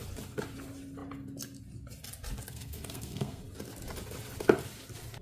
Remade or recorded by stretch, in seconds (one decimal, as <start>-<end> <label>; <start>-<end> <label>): 0.0-2.5 recorded; 2.5-3.4 remade; 3.4-5.2 recorded